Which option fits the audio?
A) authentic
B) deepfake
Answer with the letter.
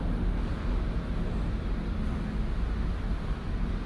A